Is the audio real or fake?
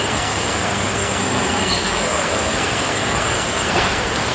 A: fake